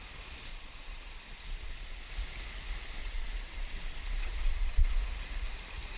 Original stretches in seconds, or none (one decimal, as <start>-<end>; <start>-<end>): 0.0-0.5; 2.1-3.0; 5.0-6.0